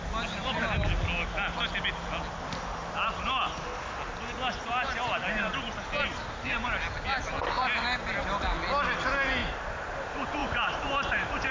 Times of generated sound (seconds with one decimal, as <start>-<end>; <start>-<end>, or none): 9.4-10.0; 10.4-11.5